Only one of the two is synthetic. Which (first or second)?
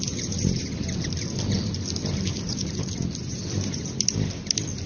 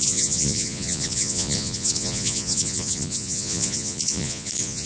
second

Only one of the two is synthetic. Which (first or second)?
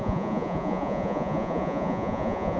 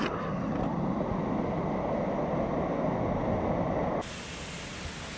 first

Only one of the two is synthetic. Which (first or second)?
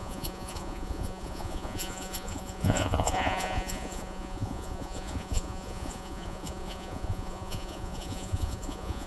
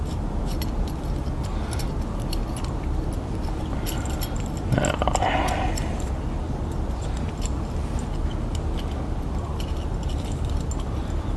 first